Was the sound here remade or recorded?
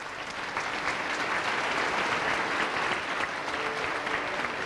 recorded